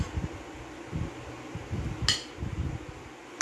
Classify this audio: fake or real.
real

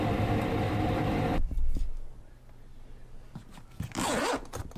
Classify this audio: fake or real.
real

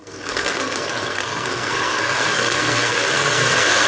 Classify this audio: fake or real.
fake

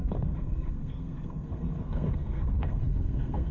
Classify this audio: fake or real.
fake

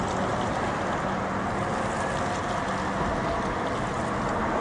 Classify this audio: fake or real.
real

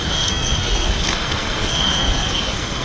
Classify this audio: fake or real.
fake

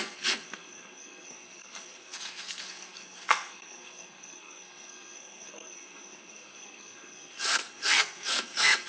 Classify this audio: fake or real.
fake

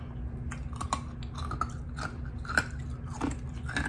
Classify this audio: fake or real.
real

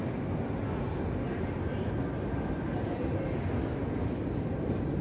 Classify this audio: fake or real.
real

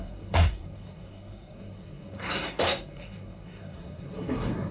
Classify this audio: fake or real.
fake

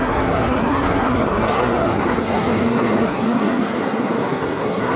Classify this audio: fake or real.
fake